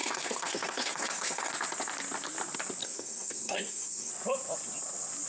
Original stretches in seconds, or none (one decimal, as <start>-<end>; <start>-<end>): 1.5-2.8; 4.1-5.3